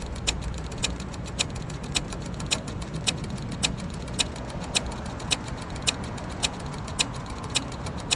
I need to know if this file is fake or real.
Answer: fake